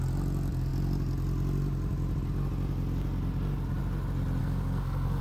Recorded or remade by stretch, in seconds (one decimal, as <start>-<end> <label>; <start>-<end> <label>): 0.0-4.4 recorded; 4.4-5.2 remade